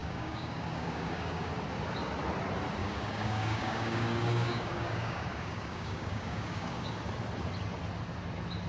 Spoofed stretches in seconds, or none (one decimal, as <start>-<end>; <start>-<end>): 0.0-1.5; 2.8-6.9